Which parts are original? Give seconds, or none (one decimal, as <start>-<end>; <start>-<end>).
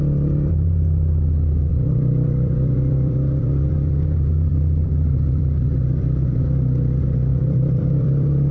0.0-1.7; 3.7-4.5; 6.4-7.3